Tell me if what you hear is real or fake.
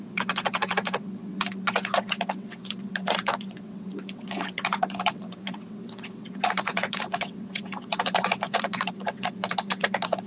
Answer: fake